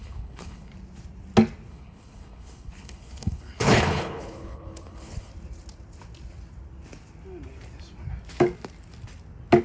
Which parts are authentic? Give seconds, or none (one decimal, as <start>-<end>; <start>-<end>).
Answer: 0.7-1.7; 5.3-9.6